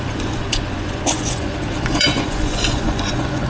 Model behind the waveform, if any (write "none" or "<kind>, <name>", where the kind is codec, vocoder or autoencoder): vocoder, Vocos